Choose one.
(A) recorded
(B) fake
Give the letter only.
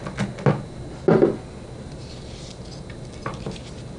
A